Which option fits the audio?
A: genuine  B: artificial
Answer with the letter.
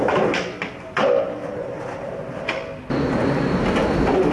A